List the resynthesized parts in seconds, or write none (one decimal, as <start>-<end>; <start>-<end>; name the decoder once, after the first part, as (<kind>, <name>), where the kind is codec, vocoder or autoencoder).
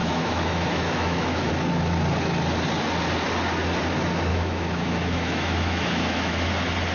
0.0-1.5 (autoencoder, DAC-VAE); 4.3-6.5